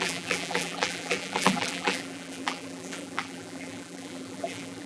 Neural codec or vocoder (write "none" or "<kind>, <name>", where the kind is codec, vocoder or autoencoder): vocoder, BigVGAN v2